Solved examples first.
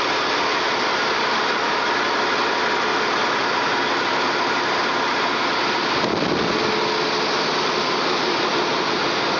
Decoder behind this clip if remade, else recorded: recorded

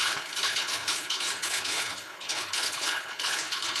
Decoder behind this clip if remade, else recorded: remade, codec, HILCodec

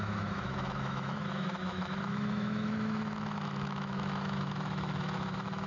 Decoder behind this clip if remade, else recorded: remade, autoencoder, DAC-VAE